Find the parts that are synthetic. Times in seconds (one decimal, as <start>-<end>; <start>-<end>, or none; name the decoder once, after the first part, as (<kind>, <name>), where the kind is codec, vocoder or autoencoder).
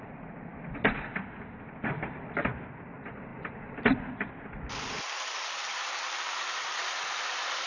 0.0-7.7 (vocoder, BigVGAN v2)